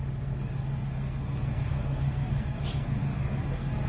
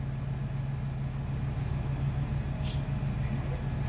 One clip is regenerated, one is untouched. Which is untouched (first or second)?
second